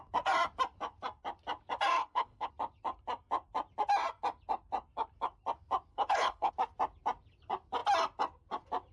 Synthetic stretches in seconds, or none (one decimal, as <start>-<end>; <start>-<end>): 2.0-2.5; 5.9-6.5